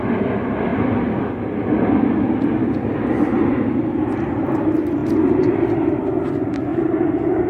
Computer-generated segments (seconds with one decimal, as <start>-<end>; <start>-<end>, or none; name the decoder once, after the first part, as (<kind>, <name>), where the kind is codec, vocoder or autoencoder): 6.7-7.5 (vocoder, BigVGAN v2)

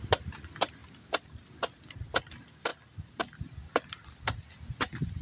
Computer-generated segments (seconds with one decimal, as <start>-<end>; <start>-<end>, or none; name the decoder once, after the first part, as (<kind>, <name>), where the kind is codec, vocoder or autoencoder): none

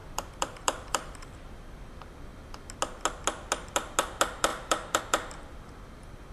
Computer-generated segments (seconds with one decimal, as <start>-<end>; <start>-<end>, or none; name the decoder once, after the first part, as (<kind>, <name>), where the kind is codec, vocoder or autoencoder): 0.0-1.8 (vocoder, BigVGAN v2); 4.5-5.0

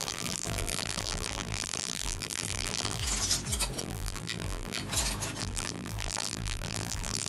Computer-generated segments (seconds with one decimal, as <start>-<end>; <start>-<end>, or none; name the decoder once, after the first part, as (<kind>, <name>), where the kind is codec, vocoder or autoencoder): 0.0-3.0 (vocoder, BigVGAN v2); 3.8-4.8; 5.4-7.3

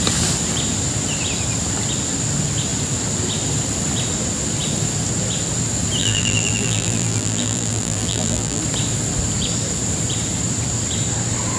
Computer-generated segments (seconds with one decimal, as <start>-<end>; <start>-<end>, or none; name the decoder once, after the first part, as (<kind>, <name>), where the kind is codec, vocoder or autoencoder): 6.0-8.6 (vocoder, BigVGAN v2)

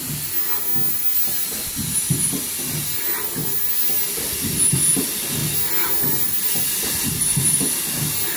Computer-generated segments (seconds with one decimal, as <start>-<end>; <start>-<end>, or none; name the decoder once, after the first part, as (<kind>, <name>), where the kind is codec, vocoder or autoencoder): none